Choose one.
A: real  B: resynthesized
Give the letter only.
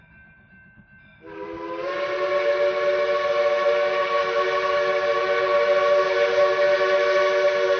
A